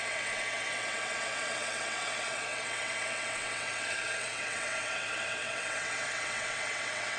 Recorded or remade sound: remade